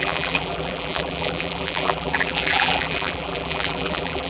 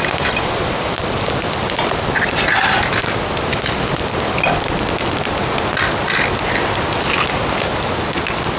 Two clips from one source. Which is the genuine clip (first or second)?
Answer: second